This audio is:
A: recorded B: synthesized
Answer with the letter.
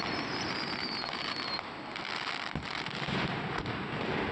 A